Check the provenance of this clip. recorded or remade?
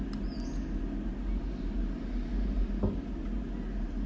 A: recorded